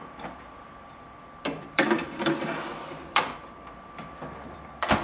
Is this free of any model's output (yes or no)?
no